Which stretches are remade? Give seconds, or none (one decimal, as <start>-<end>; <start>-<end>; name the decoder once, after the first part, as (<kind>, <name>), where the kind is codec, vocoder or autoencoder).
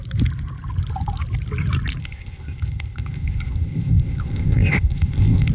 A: 2.0-5.5 (codec, ZipCodec)